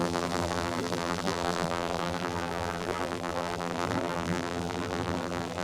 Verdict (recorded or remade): remade